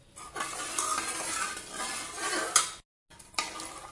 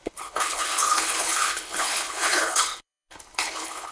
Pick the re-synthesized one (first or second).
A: second